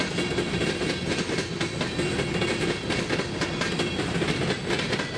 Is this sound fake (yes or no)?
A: no